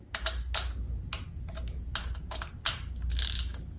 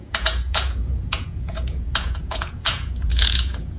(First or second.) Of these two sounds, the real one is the first